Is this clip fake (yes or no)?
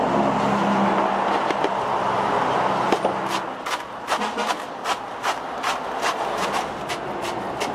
no